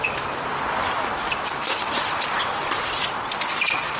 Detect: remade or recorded recorded